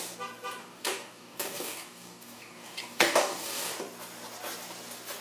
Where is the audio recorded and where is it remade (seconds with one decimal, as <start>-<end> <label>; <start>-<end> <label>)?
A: 0.0-0.6 recorded; 0.6-3.7 remade; 3.7-5.2 recorded